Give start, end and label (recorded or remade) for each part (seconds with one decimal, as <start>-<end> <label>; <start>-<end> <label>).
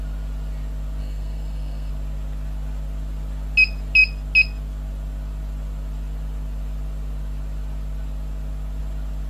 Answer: 0.0-1.0 recorded; 1.0-1.9 remade; 1.9-9.3 recorded